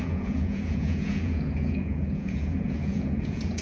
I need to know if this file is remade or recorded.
remade